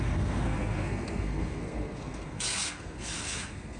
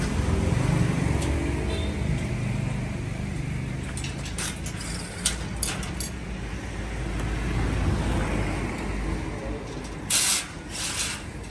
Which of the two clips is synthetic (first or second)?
first